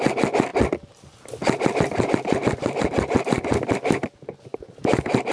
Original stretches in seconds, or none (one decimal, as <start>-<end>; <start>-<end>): 0.0-5.3